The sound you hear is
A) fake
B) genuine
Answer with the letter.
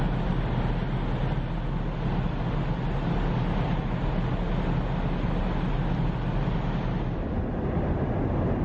B